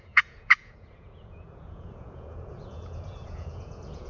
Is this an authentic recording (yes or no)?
no